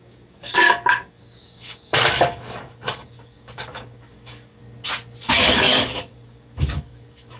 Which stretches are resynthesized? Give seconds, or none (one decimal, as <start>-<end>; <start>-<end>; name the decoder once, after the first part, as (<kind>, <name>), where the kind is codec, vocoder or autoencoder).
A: 0.0-4.6 (codec, DAC); 5.3-7.4